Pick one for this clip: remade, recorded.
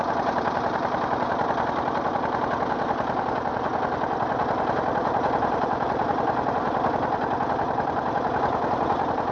recorded